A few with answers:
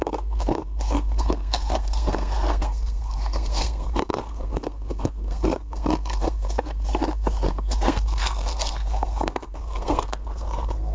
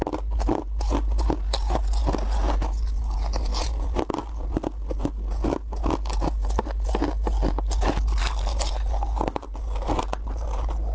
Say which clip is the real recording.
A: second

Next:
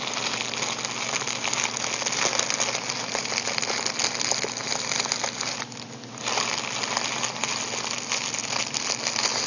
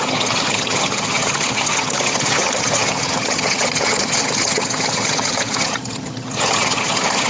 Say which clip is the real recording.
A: first